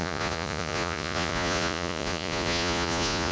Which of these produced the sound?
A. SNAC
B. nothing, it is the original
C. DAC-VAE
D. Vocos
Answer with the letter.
D